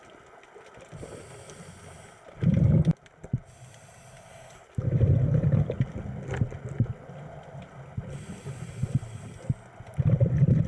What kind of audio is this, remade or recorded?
recorded